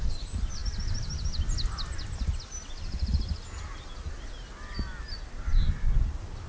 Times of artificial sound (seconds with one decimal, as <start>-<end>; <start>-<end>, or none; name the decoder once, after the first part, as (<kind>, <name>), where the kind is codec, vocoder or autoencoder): none